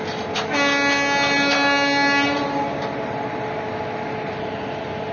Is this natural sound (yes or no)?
yes